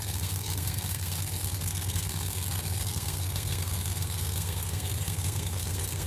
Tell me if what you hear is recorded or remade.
remade